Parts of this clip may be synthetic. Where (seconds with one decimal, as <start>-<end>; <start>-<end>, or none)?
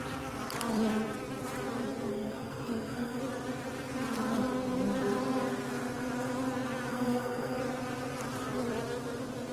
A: 2.1-3.2; 6.9-7.6